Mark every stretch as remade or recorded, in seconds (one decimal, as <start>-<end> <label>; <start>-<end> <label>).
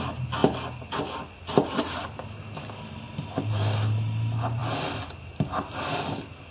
0.0-6.5 recorded